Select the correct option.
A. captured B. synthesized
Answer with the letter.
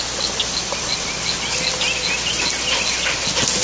A